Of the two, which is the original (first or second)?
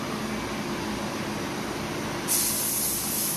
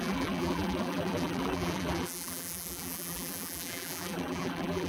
first